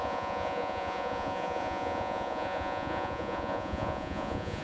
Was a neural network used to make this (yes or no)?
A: yes